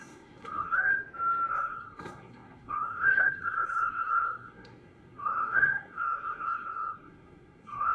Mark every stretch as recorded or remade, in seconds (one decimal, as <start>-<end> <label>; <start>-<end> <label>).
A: 0.0-0.9 remade; 0.9-1.5 recorded; 1.5-7.9 remade